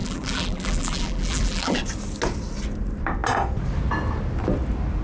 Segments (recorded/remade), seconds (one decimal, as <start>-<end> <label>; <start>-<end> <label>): 0.0-1.8 remade; 1.8-5.0 recorded